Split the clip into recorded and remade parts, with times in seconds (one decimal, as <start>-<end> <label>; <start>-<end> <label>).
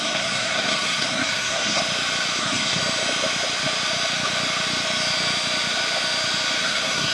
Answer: 0.0-1.8 remade; 1.8-2.4 recorded; 2.4-2.8 remade; 2.8-6.6 recorded; 6.6-7.1 remade